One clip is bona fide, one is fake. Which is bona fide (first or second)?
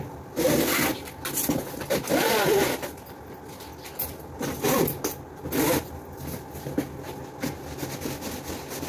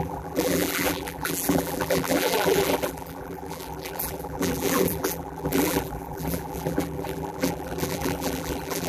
first